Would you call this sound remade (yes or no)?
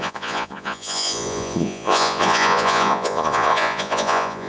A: yes